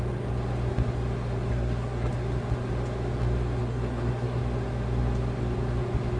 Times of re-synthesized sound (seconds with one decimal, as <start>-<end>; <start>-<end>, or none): 1.5-2.1; 3.6-4.4